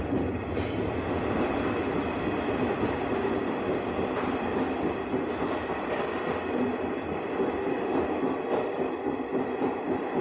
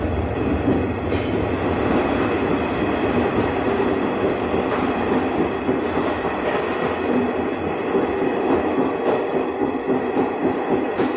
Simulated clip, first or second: first